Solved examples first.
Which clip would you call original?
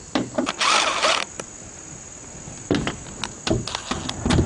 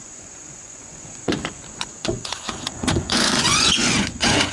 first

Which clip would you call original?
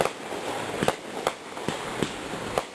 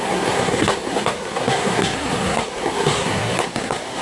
first